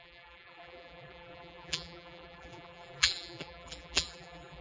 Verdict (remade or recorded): remade